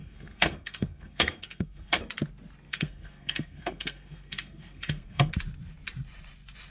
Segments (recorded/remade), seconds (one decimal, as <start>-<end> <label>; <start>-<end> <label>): 0.0-2.0 remade; 2.0-2.7 recorded; 2.7-5.3 remade; 5.3-6.7 recorded